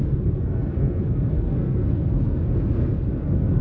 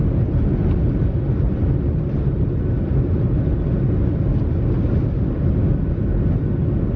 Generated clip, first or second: first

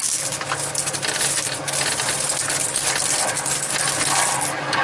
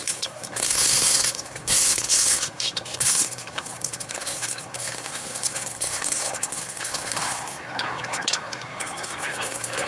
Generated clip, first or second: second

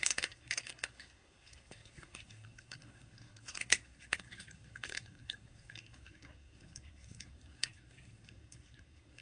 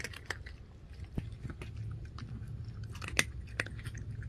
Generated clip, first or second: first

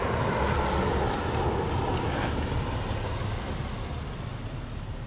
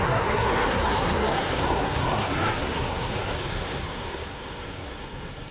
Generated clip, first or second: second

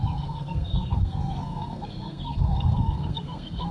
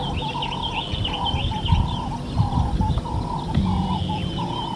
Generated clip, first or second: first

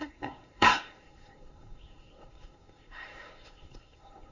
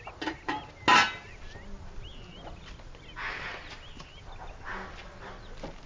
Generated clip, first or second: first